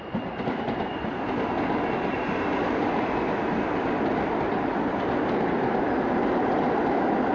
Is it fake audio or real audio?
real